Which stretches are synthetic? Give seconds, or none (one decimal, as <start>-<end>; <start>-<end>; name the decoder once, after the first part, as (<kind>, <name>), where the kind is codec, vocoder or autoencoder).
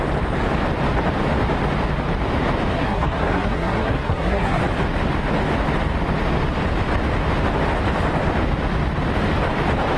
2.7-4.6 (codec, SNAC)